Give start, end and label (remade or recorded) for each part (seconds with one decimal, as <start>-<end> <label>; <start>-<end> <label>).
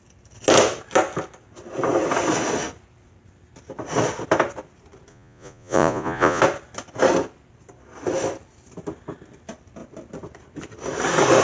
0.0-5.1 recorded; 5.1-6.4 remade; 6.4-11.4 recorded